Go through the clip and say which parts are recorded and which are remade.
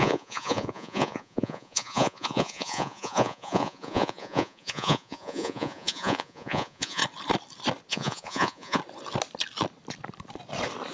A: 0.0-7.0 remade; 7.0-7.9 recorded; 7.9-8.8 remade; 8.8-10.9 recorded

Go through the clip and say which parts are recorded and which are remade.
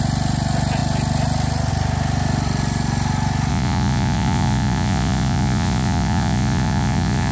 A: 0.0-3.5 recorded; 3.5-7.3 remade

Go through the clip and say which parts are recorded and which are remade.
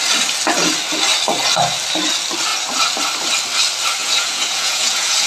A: 0.0-4.0 recorded; 4.0-5.3 remade